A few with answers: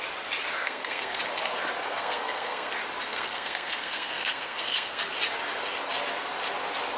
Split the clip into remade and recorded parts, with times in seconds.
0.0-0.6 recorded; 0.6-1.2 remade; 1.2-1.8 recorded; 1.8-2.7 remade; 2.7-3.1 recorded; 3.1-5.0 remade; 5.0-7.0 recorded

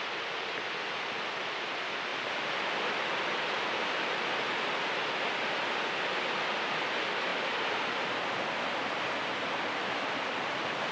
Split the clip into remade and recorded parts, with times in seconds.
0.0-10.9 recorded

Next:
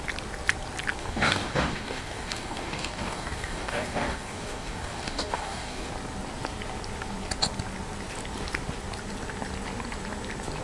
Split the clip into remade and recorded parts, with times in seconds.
0.0-1.0 recorded; 1.0-5.9 remade; 5.9-10.6 recorded